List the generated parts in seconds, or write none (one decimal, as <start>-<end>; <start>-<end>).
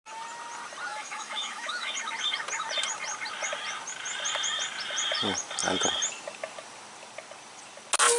0.9-1.9